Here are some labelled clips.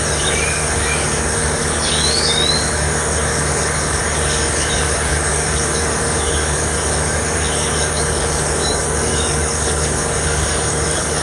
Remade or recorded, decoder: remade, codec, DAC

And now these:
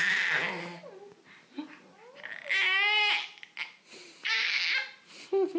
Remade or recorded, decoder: recorded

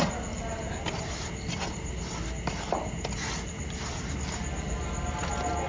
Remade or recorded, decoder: recorded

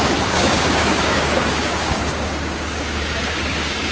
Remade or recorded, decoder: remade, codec, DAC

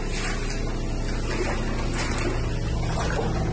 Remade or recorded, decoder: recorded